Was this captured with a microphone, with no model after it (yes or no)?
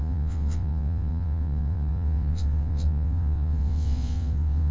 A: no